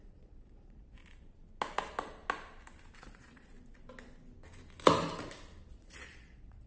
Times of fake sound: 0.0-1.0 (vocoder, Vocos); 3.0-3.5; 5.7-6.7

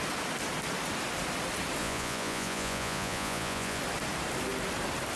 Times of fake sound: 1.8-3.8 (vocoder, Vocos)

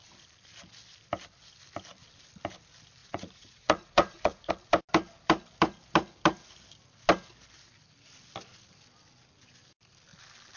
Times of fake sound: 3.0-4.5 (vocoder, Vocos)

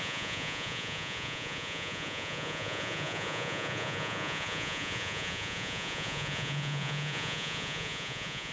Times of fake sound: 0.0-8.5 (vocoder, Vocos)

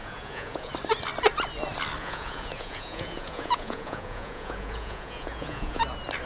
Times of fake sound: 0.0-0.7 (vocoder, Vocos); 2.0-5.8